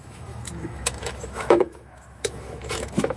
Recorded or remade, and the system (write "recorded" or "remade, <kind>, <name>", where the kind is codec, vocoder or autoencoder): remade, autoencoder, DAC-VAE